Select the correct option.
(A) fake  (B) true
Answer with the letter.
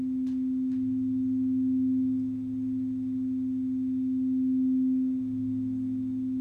B